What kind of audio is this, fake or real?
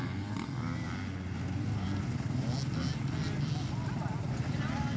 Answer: real